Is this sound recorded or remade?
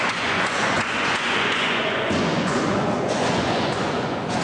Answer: remade